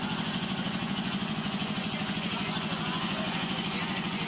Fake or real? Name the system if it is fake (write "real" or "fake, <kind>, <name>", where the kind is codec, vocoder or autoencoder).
fake, vocoder, Vocos